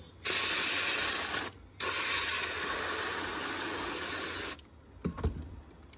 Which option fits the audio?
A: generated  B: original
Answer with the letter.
B